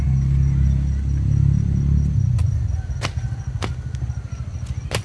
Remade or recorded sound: recorded